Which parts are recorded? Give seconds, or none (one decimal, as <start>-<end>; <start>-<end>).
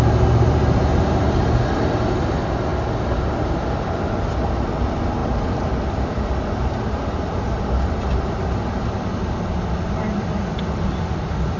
0.0-5.2; 8.9-11.6